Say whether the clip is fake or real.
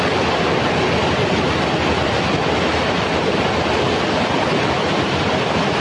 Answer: real